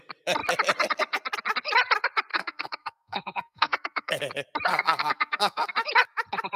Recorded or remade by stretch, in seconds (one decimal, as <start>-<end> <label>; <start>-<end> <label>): 0.0-2.3 recorded; 2.3-4.2 remade; 4.2-4.7 recorded; 4.7-5.7 remade; 5.7-6.6 recorded

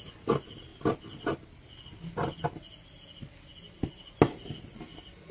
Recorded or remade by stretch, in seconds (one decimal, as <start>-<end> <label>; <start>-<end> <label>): 0.0-5.3 recorded

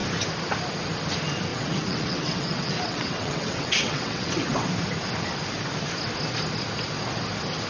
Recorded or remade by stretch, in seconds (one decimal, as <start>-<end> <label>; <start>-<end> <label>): 0.0-1.5 recorded; 1.5-4.7 remade; 4.7-7.7 recorded